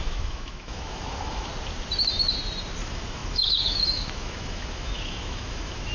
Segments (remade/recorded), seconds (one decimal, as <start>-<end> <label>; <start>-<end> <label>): 0.0-1.5 remade; 1.5-2.8 recorded; 2.8-5.9 remade